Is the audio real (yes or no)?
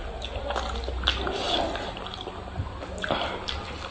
yes